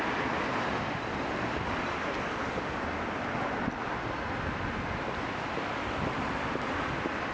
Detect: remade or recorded recorded